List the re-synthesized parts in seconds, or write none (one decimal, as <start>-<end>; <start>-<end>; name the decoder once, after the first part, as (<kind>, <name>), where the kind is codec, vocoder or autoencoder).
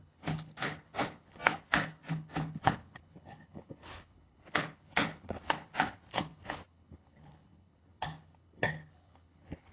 0.0-9.7 (codec, HILCodec)